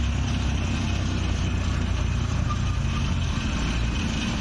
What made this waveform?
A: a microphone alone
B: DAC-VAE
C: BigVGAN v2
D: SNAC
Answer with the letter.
A